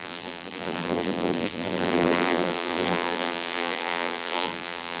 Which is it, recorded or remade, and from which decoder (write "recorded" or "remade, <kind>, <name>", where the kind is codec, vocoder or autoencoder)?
remade, vocoder, BigVGAN v2